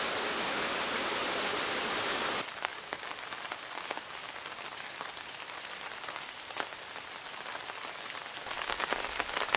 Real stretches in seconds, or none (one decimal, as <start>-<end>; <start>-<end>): 0.0-2.7; 4.0-9.6